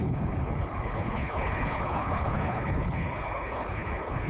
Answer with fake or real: fake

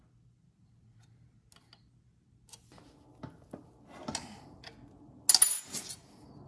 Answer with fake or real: real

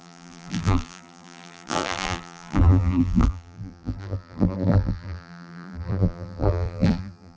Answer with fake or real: fake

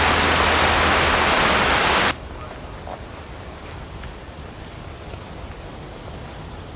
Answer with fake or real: real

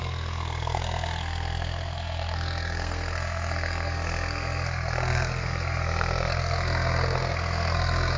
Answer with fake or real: fake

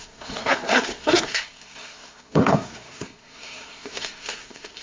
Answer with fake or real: fake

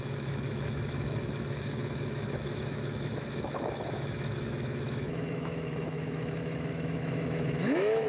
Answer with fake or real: fake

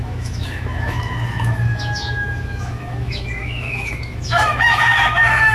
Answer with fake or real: fake